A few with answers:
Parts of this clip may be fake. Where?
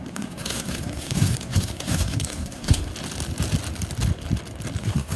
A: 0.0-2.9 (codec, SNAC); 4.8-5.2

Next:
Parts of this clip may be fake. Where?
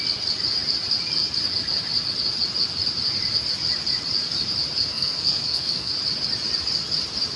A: 4.9-5.9 (codec, SNAC)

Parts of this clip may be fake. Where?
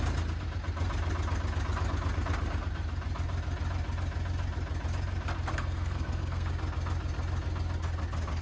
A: 5.5-6.5 (codec, SNAC)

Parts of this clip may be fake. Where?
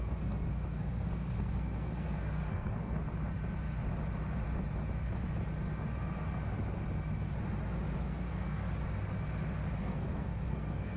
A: 0.0-3.0 (codec, SNAC); 8.0-8.6; 9.8-11.0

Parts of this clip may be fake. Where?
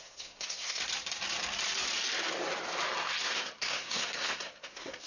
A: 0.0-0.8 (codec, SNAC); 3.2-5.1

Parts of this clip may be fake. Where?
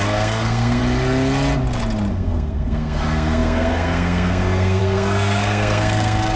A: 0.0-0.8 (codec, SNAC); 2.1-6.4